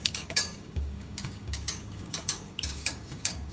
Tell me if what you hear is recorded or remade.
remade